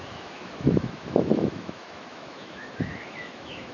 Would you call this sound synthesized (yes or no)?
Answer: yes